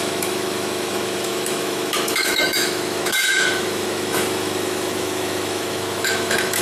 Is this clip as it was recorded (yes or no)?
no